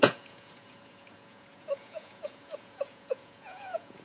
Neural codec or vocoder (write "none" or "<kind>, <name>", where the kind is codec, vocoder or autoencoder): vocoder, Vocos